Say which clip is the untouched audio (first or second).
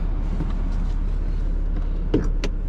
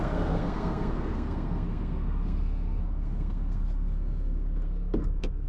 first